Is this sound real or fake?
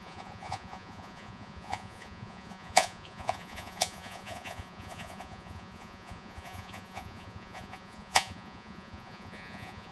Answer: fake